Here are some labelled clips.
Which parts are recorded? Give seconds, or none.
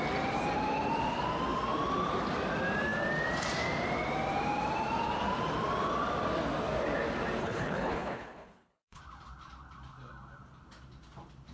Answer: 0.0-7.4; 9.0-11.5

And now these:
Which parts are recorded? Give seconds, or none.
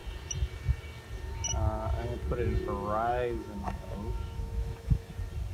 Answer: 0.0-3.1; 5.1-5.5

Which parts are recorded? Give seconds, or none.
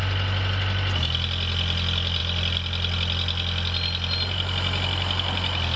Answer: 0.0-5.8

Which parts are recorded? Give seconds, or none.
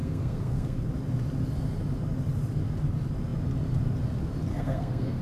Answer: 0.9-4.5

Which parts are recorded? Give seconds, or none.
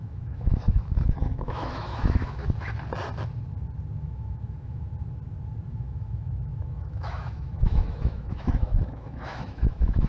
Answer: 2.4-4.0; 4.9-5.7